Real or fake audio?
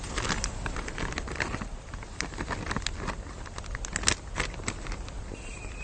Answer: real